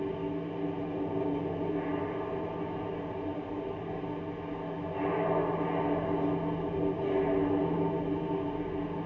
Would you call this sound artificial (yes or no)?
no